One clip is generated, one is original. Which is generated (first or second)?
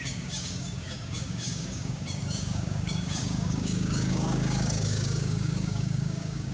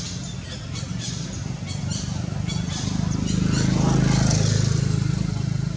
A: first